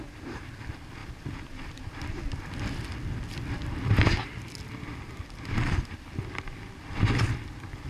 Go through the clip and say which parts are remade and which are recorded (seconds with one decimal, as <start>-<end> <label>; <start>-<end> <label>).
0.0-7.9 recorded